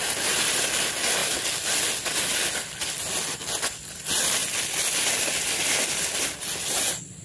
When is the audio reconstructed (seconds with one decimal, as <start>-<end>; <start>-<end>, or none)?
none